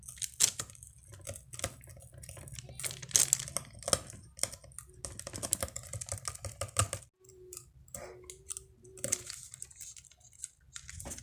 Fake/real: real